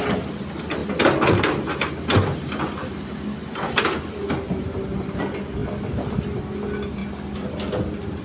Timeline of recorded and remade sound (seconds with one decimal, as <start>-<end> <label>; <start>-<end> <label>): 0.0-8.2 recorded